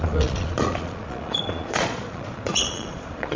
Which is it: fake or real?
fake